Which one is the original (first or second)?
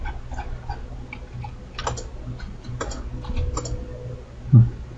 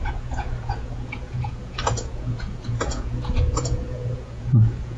first